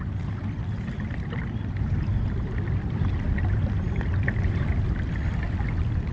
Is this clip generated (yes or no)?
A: no